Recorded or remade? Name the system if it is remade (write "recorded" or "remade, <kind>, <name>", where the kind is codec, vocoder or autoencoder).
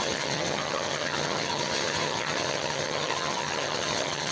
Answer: remade, vocoder, HiFi-GAN